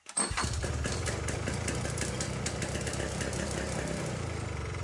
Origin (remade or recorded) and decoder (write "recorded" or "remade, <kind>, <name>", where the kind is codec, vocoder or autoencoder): recorded